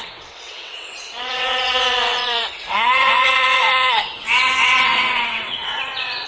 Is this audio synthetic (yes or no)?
yes